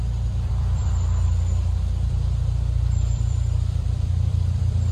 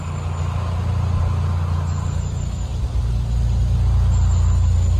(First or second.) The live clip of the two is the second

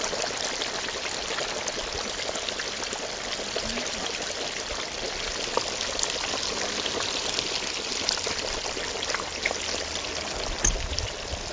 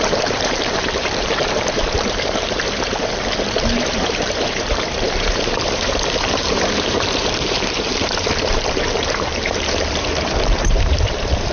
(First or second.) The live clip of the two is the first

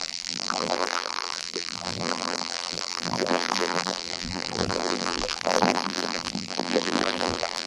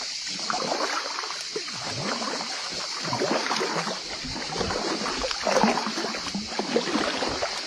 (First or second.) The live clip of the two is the second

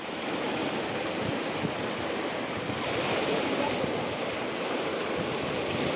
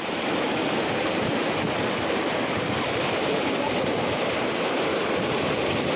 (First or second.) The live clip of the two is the first